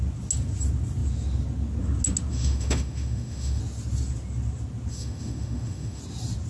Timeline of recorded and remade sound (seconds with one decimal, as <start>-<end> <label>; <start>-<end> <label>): 0.0-2.3 recorded; 2.3-3.6 remade; 3.6-4.9 recorded; 4.9-6.0 remade; 6.0-6.5 recorded